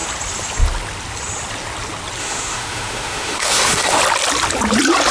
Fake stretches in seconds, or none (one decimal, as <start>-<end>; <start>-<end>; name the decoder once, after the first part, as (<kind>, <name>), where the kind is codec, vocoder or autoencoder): 2.2-4.0 (autoencoder, DAC-VAE)